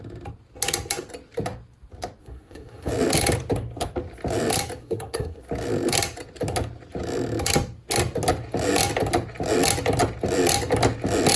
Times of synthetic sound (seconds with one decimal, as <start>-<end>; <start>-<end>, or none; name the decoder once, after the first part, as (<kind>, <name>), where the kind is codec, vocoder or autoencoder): 2.2-2.9 (codec, SNAC); 4.8-5.4